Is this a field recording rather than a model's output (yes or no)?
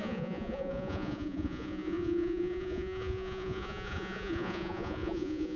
no